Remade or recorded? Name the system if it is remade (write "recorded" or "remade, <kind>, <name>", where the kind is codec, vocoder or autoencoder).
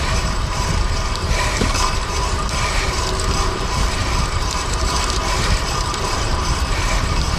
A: remade, vocoder, BigVGAN v2